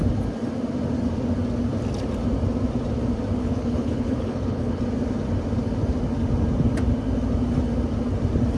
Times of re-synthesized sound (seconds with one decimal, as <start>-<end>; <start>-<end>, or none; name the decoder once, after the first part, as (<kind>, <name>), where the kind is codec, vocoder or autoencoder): 3.4-4.8 (codec, HILCodec)